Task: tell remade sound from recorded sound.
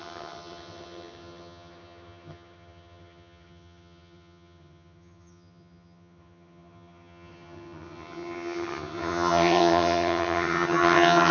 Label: remade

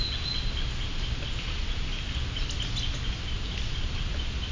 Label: recorded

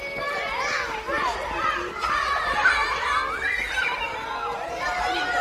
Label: recorded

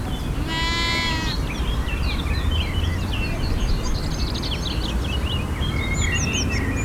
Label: recorded